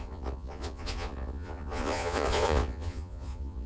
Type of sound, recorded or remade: remade